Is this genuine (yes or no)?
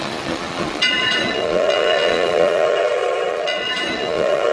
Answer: no